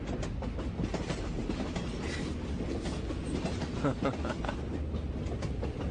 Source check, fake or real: real